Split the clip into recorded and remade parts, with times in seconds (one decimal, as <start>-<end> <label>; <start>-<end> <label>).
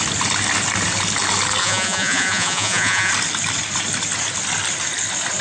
0.0-1.6 recorded; 1.6-3.1 remade; 3.1-5.4 recorded